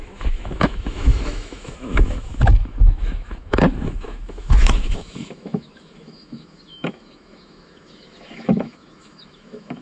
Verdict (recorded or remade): remade